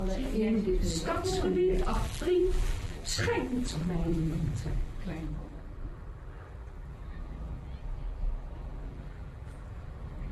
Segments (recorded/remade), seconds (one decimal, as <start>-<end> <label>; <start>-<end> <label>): 0.0-0.9 recorded; 0.9-10.3 remade